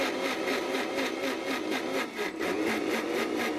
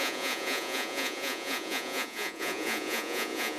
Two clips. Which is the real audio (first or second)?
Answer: first